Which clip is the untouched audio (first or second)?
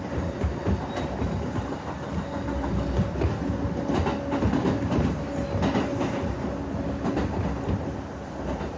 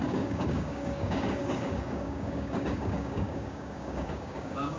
first